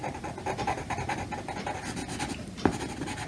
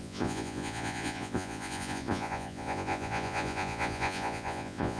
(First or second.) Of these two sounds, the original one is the first